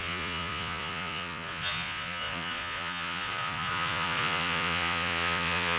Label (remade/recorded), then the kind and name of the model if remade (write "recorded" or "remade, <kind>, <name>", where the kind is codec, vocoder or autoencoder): remade, vocoder, Vocos